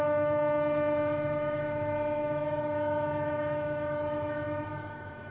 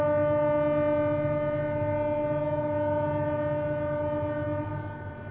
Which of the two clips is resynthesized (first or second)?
first